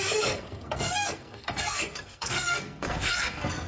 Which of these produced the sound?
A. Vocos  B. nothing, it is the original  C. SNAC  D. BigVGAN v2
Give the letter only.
C